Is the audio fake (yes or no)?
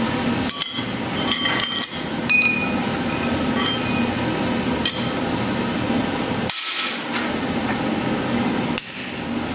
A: no